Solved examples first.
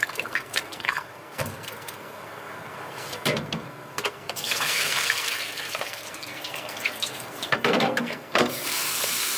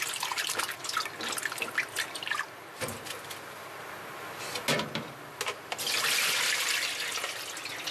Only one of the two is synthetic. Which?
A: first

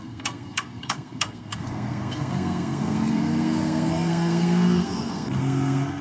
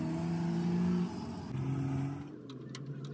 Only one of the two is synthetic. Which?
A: first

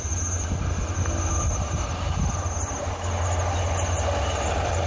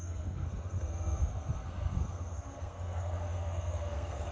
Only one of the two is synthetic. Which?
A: second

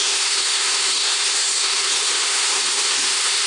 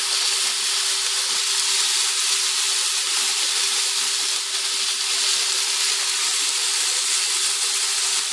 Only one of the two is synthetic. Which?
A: first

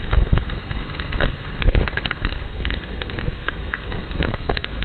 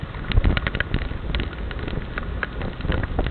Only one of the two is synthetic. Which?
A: first